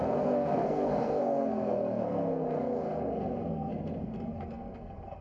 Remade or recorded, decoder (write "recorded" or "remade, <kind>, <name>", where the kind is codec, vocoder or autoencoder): remade, codec, SNAC